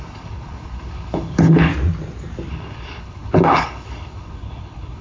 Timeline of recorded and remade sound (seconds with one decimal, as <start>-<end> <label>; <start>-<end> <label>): 0.0-1.7 remade; 1.7-2.5 recorded; 2.5-5.0 remade